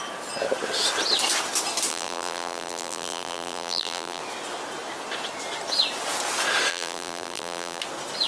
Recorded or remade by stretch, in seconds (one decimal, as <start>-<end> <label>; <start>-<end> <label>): 0.0-1.9 recorded; 1.9-4.2 remade; 4.2-6.7 recorded; 6.7-7.8 remade; 7.8-8.3 recorded